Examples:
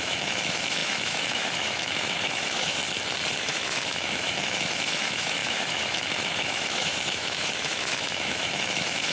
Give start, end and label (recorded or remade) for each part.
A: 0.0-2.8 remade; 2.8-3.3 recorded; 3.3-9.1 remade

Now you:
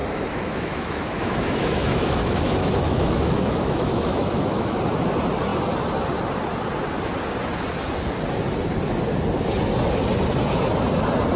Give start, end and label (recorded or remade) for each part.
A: 0.0-4.8 remade; 4.8-11.4 recorded